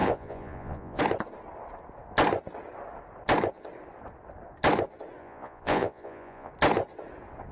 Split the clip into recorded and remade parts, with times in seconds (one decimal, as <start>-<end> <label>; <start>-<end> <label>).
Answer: 0.0-1.0 remade; 1.0-5.2 recorded; 5.2-6.5 remade; 6.5-7.5 recorded